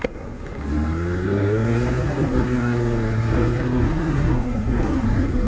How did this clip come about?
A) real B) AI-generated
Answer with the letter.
B